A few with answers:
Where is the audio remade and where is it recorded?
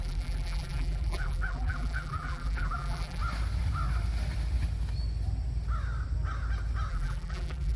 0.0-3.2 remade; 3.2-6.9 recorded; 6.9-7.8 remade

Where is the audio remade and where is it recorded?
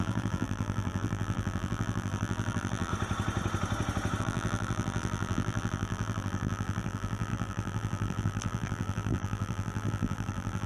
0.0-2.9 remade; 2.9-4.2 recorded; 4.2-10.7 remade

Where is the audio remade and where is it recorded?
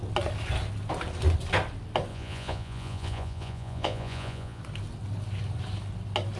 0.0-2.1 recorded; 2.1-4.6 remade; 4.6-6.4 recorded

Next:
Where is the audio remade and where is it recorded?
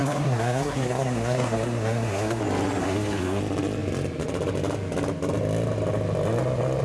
0.0-2.4 remade; 2.4-2.8 recorded; 2.8-3.4 remade; 3.4-6.8 recorded